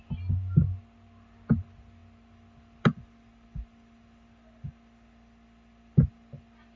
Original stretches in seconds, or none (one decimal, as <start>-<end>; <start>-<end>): 0.0-6.8